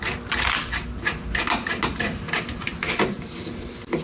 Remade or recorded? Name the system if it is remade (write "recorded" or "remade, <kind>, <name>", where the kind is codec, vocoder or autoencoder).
recorded